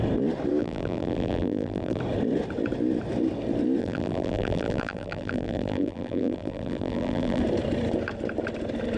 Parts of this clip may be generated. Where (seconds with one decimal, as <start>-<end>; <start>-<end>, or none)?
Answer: 0.6-2.0; 3.8-7.4